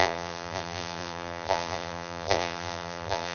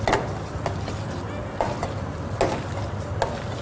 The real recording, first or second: second